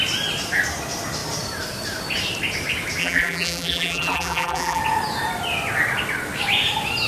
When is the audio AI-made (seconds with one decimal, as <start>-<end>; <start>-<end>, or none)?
3.0-4.8